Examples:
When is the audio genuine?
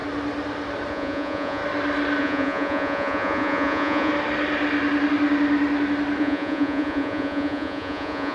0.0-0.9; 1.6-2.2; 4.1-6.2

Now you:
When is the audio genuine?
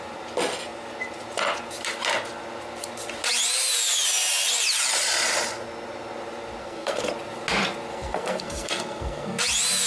0.0-6.6; 7.1-7.9; 9.4-9.9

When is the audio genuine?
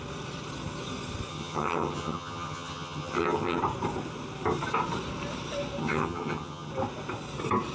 0.0-1.3; 3.6-5.8; 6.7-7.7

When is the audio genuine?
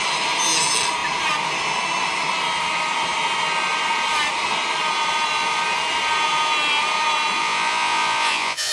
0.0-7.4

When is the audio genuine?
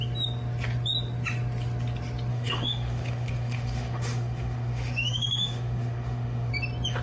0.0-2.3; 6.5-7.0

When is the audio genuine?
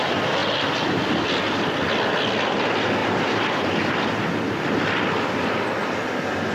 0.0-3.0; 3.7-6.5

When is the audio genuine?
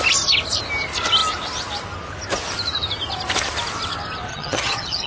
0.0-4.3